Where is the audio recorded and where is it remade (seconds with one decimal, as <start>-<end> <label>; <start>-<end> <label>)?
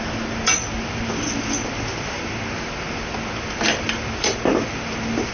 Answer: 0.0-5.3 recorded